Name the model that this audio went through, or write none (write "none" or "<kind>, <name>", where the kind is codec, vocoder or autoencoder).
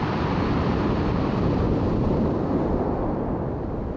none